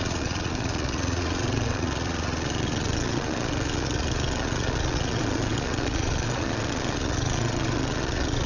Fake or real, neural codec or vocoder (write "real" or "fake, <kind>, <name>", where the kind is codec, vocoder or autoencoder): fake, vocoder, Vocos